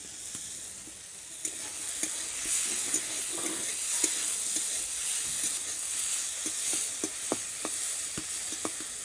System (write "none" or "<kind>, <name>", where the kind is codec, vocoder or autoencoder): none